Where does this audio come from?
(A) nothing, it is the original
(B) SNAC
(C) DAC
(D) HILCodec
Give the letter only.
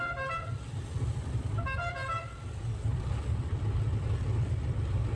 A